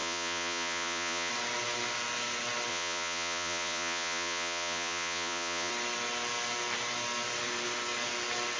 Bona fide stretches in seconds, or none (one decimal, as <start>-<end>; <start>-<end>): 1.3-2.7; 5.7-8.6